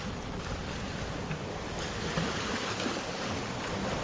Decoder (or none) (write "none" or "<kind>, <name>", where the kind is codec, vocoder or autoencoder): none